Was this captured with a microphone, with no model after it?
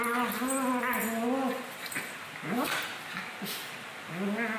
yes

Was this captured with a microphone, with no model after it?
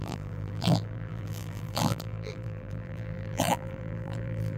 no